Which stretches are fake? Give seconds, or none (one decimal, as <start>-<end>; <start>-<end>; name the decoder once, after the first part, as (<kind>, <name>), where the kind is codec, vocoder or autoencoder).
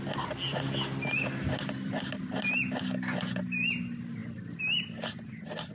none